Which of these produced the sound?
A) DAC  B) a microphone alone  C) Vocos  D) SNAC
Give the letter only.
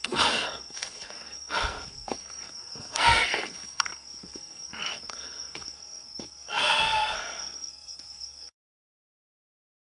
D